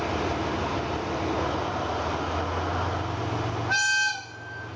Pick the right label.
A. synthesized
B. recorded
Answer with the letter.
B